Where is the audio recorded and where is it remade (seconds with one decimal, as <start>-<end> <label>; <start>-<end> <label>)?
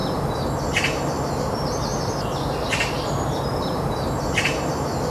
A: 0.0-1.3 recorded; 1.3-1.9 remade; 1.9-3.5 recorded; 3.5-5.1 remade